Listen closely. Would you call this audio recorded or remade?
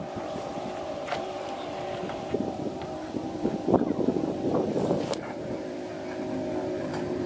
remade